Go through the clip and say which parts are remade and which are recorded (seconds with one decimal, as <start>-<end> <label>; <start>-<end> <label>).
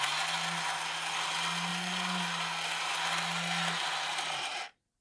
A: 0.0-5.0 recorded